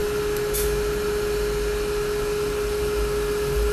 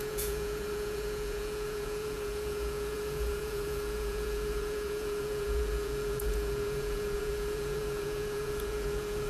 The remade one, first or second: second